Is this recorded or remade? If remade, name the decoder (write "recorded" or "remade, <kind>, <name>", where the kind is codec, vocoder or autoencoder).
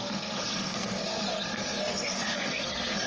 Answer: remade, codec, SNAC